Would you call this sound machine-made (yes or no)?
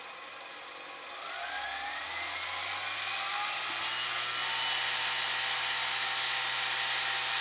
no